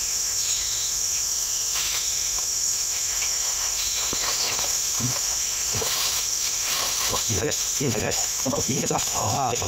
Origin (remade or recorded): remade